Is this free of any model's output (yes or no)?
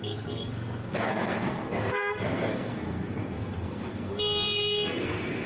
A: no